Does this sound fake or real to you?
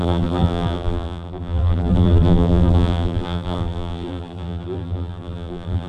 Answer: fake